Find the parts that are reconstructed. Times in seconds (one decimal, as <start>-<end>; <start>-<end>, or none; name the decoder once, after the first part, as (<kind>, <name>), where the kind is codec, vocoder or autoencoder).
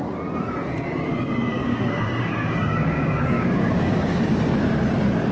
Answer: 1.6-4.4 (codec, DAC)